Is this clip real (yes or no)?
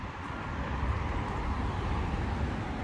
yes